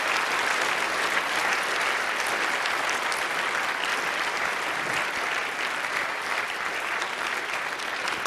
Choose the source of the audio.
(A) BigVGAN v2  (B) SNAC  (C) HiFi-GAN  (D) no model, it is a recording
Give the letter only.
D